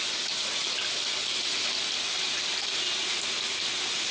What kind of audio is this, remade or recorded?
recorded